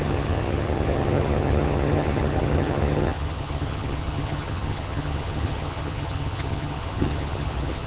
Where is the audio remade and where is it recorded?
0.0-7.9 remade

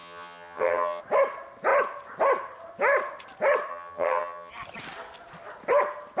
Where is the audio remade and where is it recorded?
0.0-1.0 remade; 1.0-3.7 recorded; 3.7-4.5 remade; 4.5-6.2 recorded

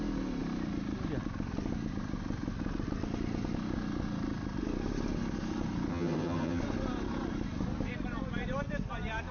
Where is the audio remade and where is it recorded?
0.0-5.9 recorded; 5.9-6.6 remade; 6.6-9.3 recorded

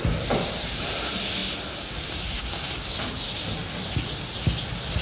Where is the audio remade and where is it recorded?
0.0-5.0 recorded

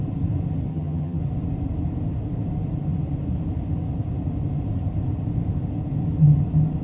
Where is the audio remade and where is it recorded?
0.0-0.7 recorded; 0.7-1.2 remade; 1.2-6.8 recorded

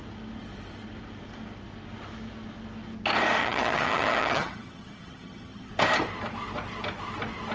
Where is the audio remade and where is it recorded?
0.0-3.4 recorded; 3.4-5.7 remade; 5.7-7.5 recorded

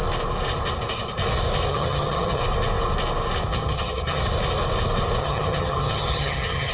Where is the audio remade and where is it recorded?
0.0-1.7 recorded; 1.7-2.4 remade; 2.4-3.5 recorded; 3.5-4.2 remade; 4.2-5.2 recorded; 5.2-6.7 remade

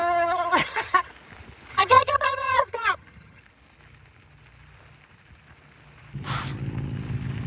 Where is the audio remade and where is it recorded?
0.0-1.1 remade; 1.1-1.7 recorded; 1.7-3.4 remade; 3.4-7.5 recorded